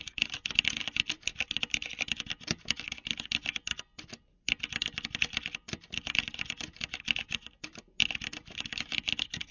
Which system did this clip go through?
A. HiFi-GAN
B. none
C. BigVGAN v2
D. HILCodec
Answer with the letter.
B